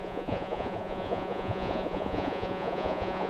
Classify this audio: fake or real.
fake